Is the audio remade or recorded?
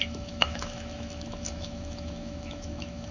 remade